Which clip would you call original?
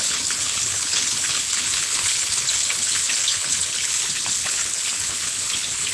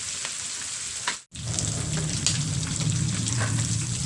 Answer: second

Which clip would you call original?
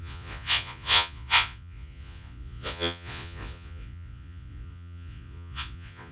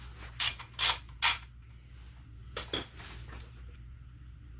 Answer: second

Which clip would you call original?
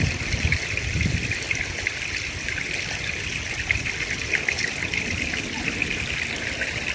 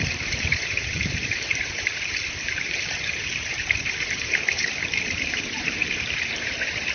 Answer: first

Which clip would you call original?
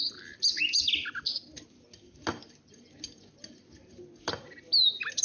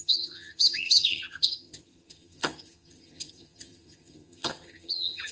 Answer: first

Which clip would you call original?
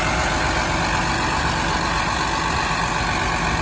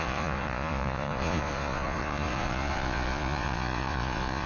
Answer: first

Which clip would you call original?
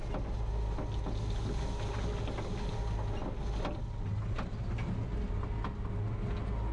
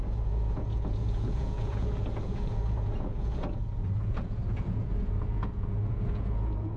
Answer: first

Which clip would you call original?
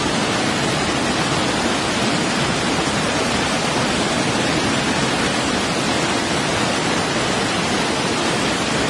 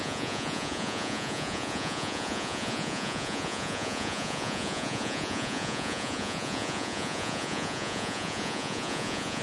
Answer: first